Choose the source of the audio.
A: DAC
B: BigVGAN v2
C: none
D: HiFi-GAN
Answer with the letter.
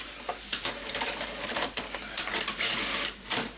B